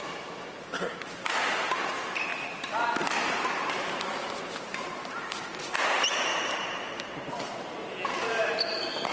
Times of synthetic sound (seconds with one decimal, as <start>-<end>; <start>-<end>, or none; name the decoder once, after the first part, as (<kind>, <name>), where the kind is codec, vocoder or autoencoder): 0.0-2.3 (vocoder, BigVGAN v2); 4.3-7.5; 8.2-9.1